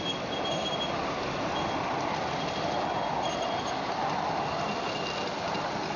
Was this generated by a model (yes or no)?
no